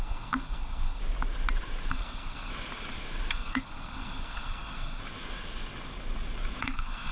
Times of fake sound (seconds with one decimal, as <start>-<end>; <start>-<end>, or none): 0.0-1.0; 1.9-2.5; 3.3-5.0; 6.6-7.1